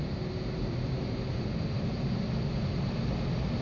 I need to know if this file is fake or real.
real